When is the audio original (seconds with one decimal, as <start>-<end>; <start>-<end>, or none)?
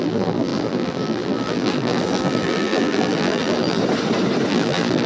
3.8-4.5